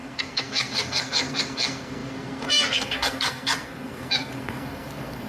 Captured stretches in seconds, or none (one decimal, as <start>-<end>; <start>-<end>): none